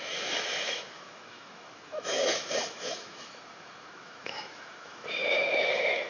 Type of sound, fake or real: fake